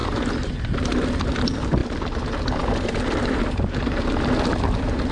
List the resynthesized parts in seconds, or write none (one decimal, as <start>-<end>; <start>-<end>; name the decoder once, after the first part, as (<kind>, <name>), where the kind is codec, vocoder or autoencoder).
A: 0.0-0.6 (vocoder, BigVGAN v2); 1.8-3.6